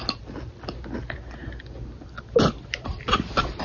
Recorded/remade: recorded